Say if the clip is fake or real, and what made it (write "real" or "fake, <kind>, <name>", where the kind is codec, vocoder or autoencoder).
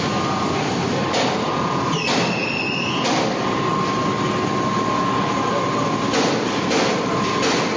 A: real